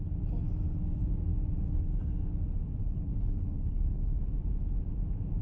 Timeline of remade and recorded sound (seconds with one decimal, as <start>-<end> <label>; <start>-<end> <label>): 0.0-2.8 recorded; 2.8-4.2 remade; 4.2-5.4 recorded